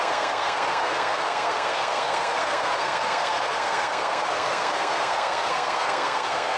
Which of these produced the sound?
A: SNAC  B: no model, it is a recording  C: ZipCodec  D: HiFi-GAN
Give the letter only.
A